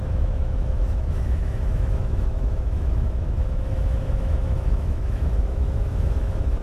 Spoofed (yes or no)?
yes